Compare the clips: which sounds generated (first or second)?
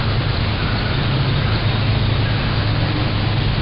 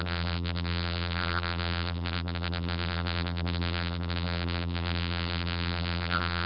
second